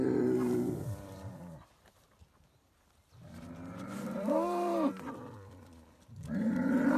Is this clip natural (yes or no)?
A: no